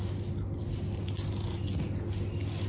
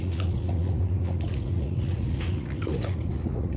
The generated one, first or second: second